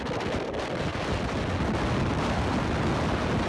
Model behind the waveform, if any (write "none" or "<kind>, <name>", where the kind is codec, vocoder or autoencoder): none